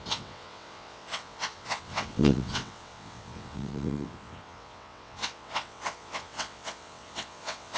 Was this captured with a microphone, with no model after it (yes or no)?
no